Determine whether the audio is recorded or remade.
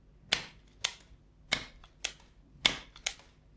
recorded